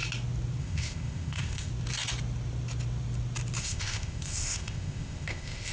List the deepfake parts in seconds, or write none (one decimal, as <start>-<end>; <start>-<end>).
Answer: 0.6-1.7; 3.6-5.7